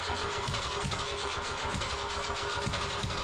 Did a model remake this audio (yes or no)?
yes